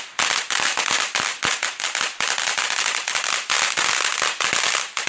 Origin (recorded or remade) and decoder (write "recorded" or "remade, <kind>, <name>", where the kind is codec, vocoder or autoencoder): recorded